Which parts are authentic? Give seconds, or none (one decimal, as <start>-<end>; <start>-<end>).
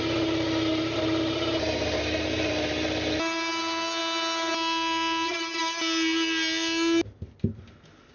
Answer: 0.0-8.1